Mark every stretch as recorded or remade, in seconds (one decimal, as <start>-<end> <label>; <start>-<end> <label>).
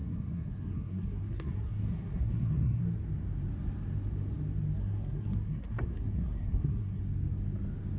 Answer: 0.0-2.8 remade; 2.8-4.8 recorded; 4.8-7.0 remade; 7.0-8.0 recorded